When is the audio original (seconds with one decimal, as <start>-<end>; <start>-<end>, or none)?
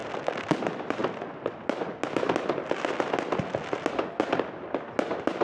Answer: 0.0-5.4